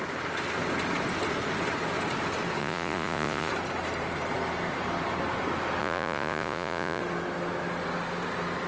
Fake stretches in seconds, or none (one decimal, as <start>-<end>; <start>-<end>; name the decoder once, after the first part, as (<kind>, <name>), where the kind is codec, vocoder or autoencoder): 2.6-3.5 (vocoder, Vocos); 5.8-7.0